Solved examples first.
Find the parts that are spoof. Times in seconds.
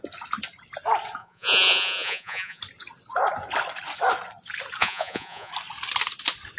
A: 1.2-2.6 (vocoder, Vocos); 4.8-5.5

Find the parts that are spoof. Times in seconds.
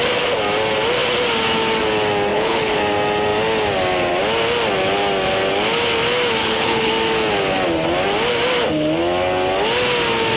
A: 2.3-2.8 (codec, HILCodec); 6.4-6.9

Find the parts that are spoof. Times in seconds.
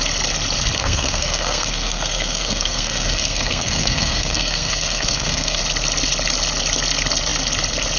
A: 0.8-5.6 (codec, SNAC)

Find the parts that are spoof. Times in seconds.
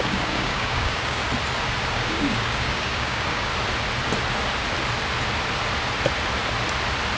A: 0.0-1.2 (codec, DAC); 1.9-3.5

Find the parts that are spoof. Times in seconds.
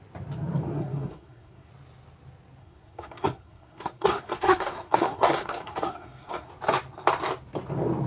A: 0.7-1.7 (codec, SNAC); 2.6-6.5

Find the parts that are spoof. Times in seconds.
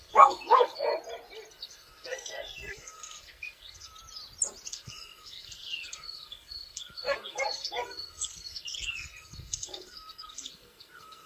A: 0.0-0.9 (codec, SNAC); 1.5-3.9; 4.7-11.3